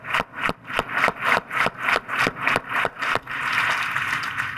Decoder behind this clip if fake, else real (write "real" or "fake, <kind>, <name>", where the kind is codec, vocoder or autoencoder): real